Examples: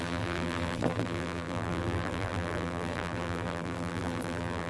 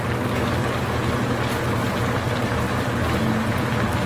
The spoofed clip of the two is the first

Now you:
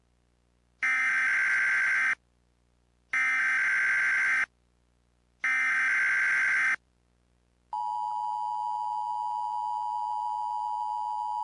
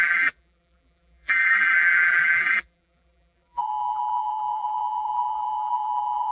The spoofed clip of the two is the second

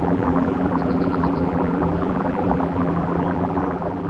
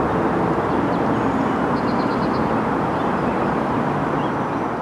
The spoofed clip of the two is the first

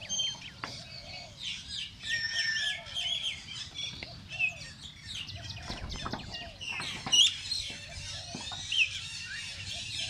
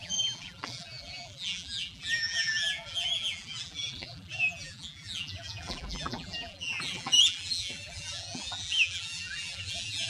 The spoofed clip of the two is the second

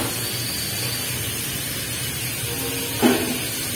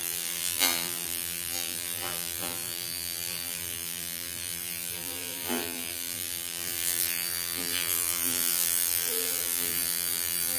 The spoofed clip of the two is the second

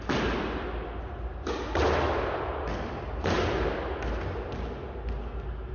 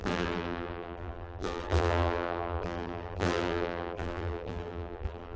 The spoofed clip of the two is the second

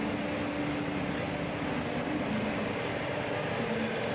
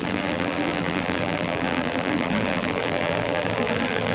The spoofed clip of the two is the second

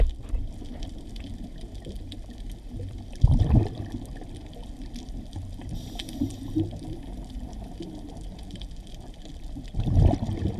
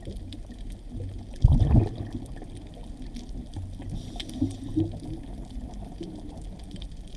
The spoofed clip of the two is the first